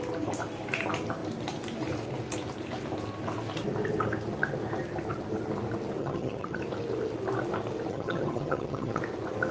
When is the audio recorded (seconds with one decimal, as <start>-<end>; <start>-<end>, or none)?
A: 0.0-6.0; 6.6-7.9; 9.0-9.5